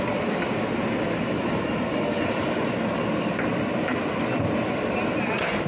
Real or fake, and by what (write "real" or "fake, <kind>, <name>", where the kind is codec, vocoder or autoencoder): real